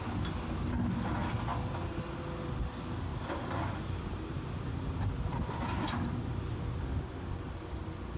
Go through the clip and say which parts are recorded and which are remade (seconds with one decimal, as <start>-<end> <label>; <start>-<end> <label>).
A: 0.0-3.1 recorded; 3.1-7.3 remade; 7.3-8.2 recorded